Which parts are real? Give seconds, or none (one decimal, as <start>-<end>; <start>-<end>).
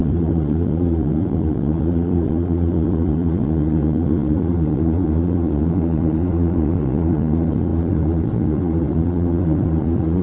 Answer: none